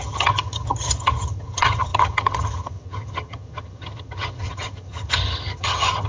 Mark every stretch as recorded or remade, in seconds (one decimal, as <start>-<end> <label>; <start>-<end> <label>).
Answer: 0.0-6.1 remade